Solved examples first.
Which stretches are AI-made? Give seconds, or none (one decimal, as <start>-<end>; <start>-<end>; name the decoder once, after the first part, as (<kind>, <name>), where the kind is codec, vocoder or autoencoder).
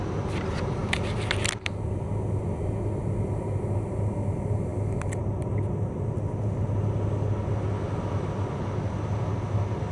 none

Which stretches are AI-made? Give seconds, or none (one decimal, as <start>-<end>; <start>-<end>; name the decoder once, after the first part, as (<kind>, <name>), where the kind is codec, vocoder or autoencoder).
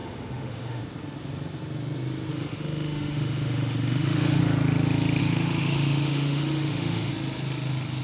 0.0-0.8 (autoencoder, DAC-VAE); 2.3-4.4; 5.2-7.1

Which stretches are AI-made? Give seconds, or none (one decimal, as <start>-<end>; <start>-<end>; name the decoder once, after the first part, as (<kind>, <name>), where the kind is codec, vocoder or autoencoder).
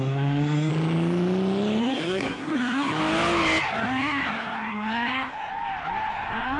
0.0-0.7 (codec, SNAC); 1.8-3.0; 3.6-5.5; 6.1-6.6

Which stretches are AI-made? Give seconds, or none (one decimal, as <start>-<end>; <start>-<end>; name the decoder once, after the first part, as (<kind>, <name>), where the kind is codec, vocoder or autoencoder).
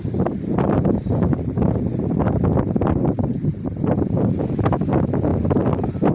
0.0-5.3 (vocoder, BigVGAN v2)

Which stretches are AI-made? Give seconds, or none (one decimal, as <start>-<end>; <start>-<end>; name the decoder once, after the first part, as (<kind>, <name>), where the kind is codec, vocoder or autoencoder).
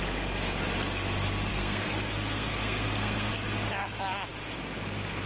1.5-3.3 (codec, SNAC)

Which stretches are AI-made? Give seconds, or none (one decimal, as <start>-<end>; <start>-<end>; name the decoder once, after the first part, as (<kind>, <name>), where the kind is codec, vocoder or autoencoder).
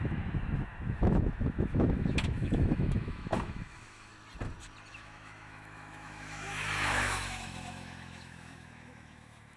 0.0-4.1 (autoencoder, DAC-VAE); 4.9-9.6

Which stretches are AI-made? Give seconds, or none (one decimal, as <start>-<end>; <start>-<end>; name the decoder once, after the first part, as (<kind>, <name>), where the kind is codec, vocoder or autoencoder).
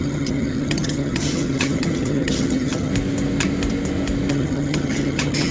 0.0-2.9 (vocoder, HiFi-GAN); 4.3-5.5